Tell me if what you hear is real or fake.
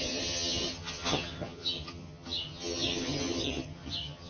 fake